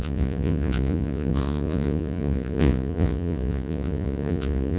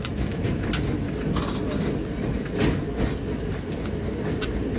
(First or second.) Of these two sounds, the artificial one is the first